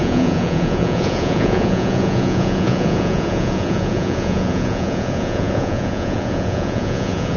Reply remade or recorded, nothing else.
remade